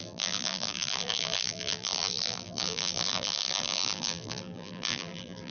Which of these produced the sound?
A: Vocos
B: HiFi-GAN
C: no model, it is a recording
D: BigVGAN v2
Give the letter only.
D